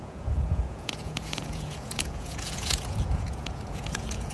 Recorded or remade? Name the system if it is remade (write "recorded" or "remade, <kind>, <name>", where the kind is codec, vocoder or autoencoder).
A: remade, vocoder, Vocos